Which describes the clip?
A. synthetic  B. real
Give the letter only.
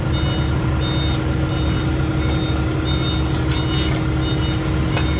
B